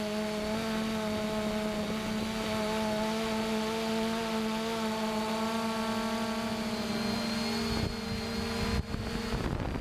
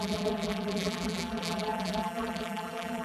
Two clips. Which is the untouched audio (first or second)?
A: first